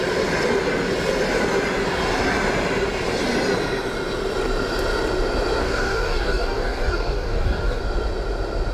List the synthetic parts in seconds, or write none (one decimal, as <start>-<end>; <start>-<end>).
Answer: 5.6-7.8

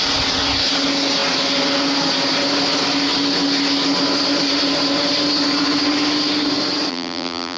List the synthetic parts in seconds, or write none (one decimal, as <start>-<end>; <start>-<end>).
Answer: 6.9-7.6